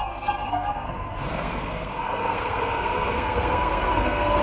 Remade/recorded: remade